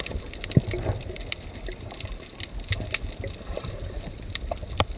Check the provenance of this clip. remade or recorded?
recorded